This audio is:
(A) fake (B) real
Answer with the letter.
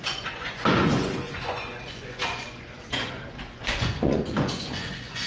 A